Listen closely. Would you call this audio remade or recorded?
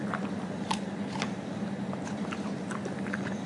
recorded